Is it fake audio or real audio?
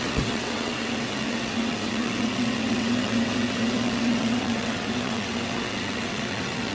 fake